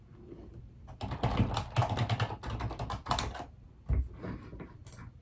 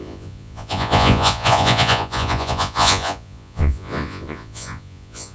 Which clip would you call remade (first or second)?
second